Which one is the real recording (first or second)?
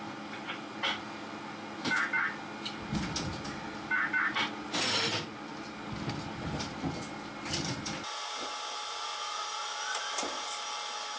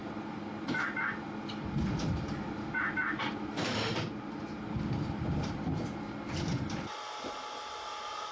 first